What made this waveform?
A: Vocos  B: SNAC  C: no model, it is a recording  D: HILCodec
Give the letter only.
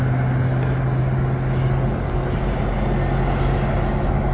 C